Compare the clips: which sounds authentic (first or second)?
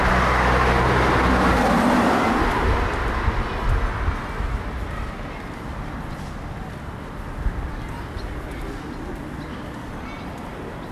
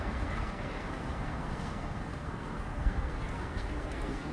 first